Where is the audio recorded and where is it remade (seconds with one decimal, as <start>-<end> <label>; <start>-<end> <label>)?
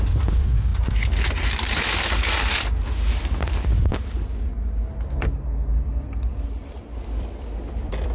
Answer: 0.0-5.7 recorded; 5.7-8.1 remade